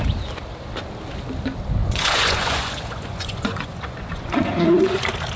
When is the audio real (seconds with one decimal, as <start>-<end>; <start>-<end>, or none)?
0.0-1.8; 5.0-5.4